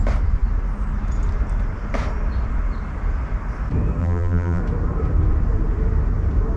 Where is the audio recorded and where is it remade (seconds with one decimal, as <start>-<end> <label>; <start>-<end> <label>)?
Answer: 0.0-4.0 recorded; 4.0-4.6 remade; 4.6-6.6 recorded